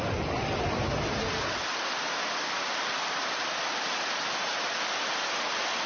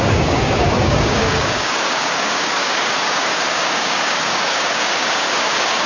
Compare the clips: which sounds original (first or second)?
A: first